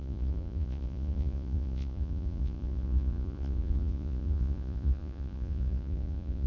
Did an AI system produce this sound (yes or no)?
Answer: yes